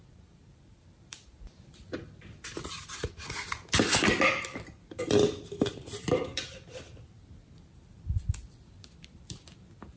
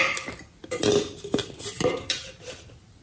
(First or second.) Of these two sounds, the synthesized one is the first